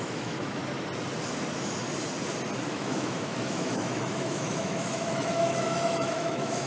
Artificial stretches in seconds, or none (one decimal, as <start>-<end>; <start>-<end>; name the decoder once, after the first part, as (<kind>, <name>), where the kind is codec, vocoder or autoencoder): 0.0-0.6 (autoencoder, DAC-VAE); 2.7-6.7